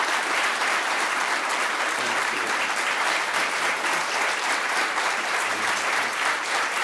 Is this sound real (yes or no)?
no